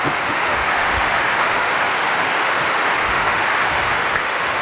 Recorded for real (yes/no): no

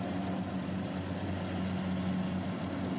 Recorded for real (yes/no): yes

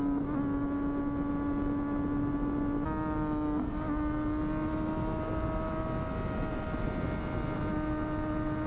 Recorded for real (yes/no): yes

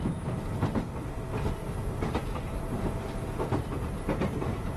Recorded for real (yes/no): yes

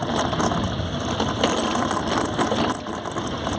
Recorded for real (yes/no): yes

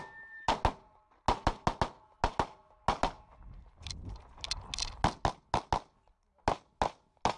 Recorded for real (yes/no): yes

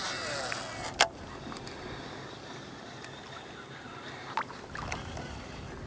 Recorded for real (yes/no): yes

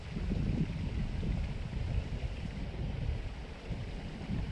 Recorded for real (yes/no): yes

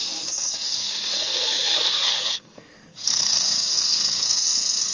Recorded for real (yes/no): no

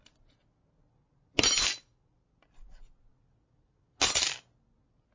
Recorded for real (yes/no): yes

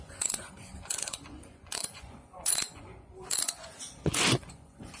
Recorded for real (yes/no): no